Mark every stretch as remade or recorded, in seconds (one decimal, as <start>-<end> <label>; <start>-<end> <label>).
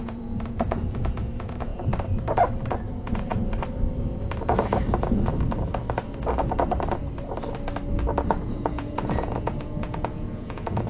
0.0-1.7 remade; 1.7-2.9 recorded; 2.9-3.3 remade; 3.3-8.3 recorded; 8.3-10.9 remade